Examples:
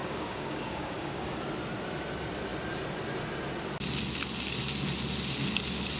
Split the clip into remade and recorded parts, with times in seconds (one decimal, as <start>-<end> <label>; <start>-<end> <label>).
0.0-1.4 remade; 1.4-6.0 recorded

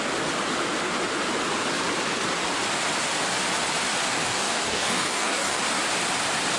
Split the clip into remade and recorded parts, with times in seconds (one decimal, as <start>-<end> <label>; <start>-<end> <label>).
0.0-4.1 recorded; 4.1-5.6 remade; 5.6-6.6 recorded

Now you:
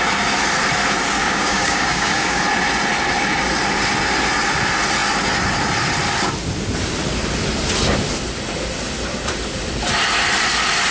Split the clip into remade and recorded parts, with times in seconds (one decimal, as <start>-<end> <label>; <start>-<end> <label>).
0.0-1.2 recorded; 1.2-2.4 remade; 2.4-10.9 recorded

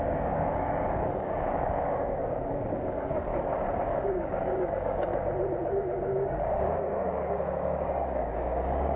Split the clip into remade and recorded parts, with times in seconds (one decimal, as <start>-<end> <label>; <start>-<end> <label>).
0.0-3.3 remade; 3.3-3.8 recorded; 3.8-5.1 remade; 5.1-5.7 recorded; 5.7-9.0 remade

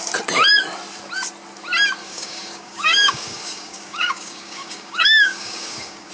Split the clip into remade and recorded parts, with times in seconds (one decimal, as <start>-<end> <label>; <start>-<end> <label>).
0.0-2.0 recorded; 2.0-6.1 remade